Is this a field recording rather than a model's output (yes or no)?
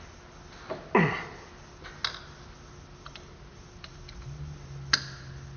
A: yes